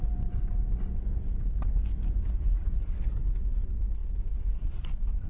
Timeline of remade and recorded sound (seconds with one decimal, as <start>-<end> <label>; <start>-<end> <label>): 0.0-3.2 remade; 3.2-4.0 recorded; 4.0-4.5 remade; 4.5-5.3 recorded